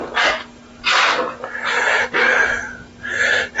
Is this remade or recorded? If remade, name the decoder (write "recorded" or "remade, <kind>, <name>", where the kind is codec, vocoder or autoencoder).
recorded